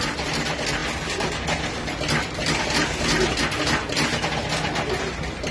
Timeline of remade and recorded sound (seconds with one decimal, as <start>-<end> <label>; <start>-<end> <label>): 0.0-5.5 recorded